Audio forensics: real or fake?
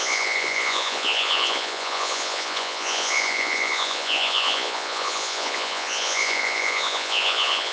fake